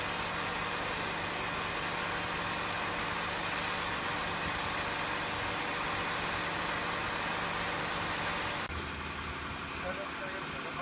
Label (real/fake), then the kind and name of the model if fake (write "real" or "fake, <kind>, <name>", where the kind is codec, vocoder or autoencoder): real